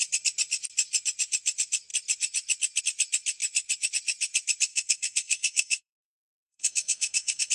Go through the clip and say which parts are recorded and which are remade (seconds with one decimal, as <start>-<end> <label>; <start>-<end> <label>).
0.0-4.7 recorded; 4.7-7.5 remade